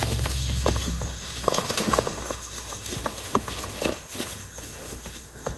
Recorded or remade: remade